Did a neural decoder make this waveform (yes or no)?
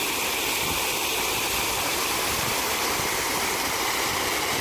no